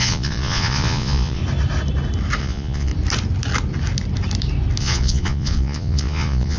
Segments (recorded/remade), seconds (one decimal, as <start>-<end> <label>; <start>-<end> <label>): 0.0-1.4 remade; 1.4-2.4 recorded; 2.4-2.9 remade; 2.9-4.8 recorded; 4.8-6.6 remade